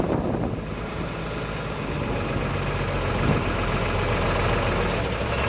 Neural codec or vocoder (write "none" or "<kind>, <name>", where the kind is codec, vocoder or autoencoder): none